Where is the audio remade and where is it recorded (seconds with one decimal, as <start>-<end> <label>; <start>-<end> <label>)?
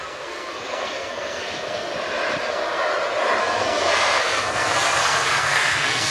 0.0-1.9 remade; 1.9-2.4 recorded; 2.4-2.9 remade; 2.9-3.4 recorded; 3.4-6.1 remade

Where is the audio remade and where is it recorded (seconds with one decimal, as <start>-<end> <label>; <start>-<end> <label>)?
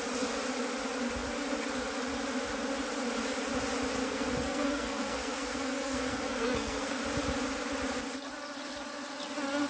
0.0-4.0 recorded; 4.0-7.0 remade; 7.0-9.7 recorded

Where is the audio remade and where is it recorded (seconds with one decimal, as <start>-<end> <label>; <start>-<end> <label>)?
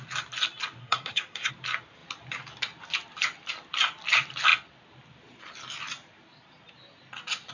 0.0-0.8 recorded; 0.8-1.5 remade; 1.5-7.5 recorded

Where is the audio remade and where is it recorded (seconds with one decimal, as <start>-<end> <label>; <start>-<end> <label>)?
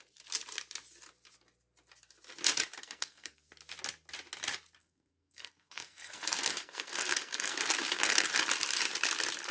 0.0-2.8 recorded; 2.8-3.5 remade; 3.5-4.8 recorded; 4.8-8.3 remade; 8.3-9.5 recorded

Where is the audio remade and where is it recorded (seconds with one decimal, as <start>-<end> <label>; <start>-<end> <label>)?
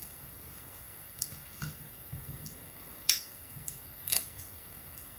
0.0-5.2 remade